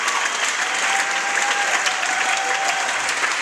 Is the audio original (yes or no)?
yes